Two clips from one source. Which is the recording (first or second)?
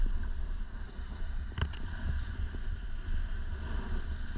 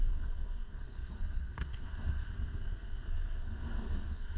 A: first